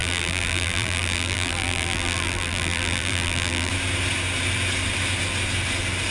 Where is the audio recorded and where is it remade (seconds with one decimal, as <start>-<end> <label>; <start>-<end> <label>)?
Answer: 0.0-3.7 remade; 3.7-6.1 recorded